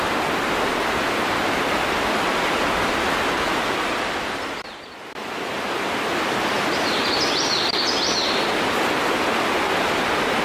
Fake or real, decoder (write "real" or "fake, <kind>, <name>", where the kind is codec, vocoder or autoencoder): real